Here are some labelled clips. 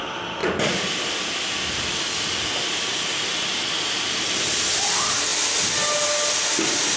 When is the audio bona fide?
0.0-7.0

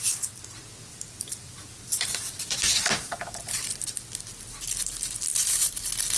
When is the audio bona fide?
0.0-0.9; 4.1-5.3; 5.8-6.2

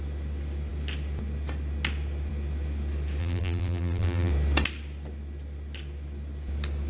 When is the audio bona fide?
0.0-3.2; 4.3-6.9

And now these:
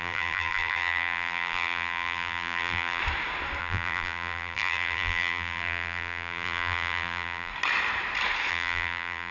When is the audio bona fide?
3.0-3.6; 7.5-8.5

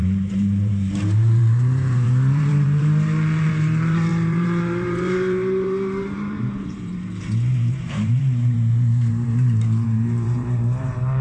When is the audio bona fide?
none